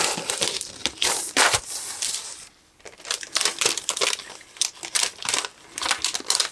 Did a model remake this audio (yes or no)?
yes